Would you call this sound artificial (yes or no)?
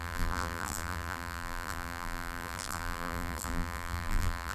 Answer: yes